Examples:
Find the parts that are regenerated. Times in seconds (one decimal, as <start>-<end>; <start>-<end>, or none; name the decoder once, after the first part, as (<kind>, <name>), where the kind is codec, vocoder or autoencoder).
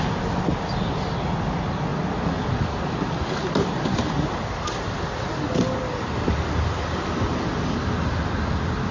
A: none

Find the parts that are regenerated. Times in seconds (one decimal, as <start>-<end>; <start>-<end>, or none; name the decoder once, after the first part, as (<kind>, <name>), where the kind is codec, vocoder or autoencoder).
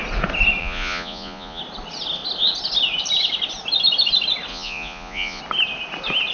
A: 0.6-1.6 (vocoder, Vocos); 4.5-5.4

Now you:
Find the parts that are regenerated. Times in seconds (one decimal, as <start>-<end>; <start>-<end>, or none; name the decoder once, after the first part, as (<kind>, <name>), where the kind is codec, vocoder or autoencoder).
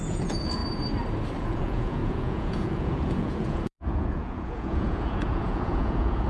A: 0.0-0.6 (vocoder, Vocos); 1.4-6.3